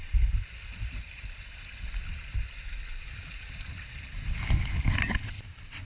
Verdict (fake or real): real